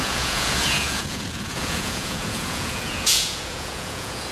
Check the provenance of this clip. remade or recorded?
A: remade